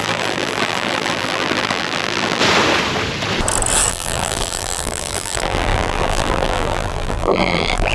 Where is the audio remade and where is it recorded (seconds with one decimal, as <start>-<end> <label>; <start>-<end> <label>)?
0.0-2.4 remade; 2.4-3.9 recorded; 3.9-7.9 remade